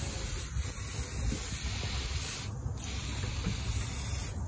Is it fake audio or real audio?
real